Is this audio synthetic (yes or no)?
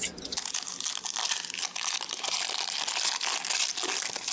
no